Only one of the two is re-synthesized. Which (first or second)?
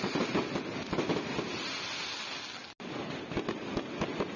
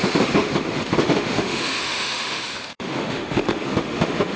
second